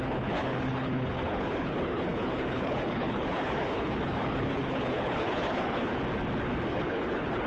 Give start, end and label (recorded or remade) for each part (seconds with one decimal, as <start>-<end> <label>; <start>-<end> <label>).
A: 0.0-5.9 remade; 5.9-6.7 recorded; 6.7-7.5 remade